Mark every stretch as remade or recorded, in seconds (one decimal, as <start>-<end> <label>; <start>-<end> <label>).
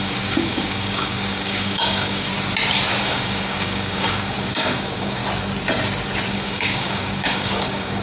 0.0-2.3 remade; 2.3-3.0 recorded; 3.0-5.2 remade; 5.2-6.3 recorded; 6.3-8.0 remade